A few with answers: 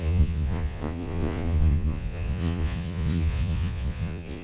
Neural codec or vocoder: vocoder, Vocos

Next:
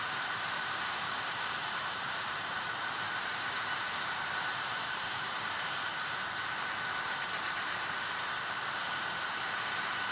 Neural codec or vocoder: vocoder, BigVGAN v2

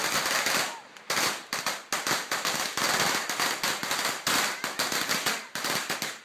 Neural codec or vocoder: none